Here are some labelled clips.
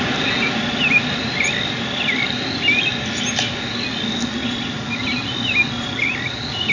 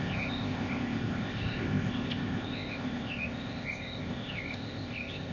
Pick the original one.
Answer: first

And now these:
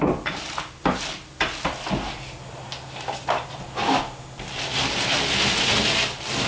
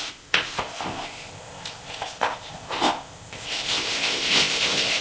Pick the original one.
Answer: first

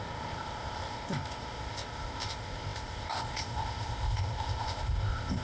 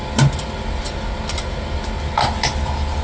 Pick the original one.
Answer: second